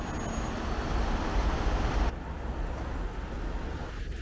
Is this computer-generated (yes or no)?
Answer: no